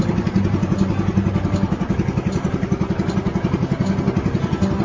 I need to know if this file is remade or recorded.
recorded